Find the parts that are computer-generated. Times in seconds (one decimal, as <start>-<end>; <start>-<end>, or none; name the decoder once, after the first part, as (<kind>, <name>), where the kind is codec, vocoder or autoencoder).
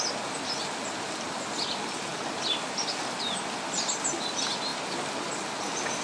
none